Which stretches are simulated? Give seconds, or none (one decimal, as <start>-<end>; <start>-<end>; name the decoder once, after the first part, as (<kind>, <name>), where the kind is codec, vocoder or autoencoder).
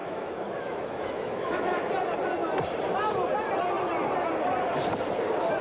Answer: 0.0-1.9 (autoencoder, DAC-VAE)